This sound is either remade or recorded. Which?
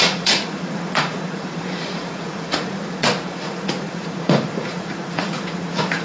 remade